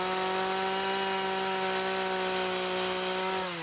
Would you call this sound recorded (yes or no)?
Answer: yes